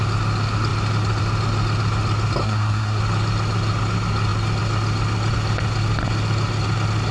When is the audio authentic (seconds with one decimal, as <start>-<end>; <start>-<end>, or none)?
0.0-2.4; 3.0-7.1